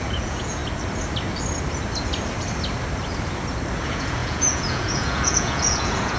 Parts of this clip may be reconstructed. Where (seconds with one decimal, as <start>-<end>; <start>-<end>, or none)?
0.0-0.6; 3.8-6.2